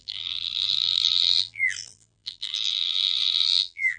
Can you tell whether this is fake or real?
fake